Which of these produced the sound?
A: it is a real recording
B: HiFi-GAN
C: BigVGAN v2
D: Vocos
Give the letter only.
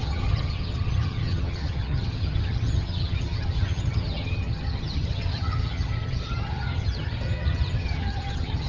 B